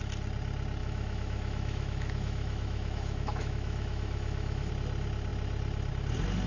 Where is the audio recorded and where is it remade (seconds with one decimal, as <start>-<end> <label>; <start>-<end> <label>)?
0.0-0.8 recorded; 0.8-4.7 remade; 4.7-6.5 recorded